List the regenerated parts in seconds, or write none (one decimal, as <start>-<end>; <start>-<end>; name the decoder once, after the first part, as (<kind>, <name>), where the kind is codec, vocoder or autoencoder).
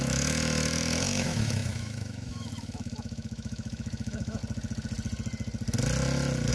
0.0-4.4 (autoencoder, DAC-VAE)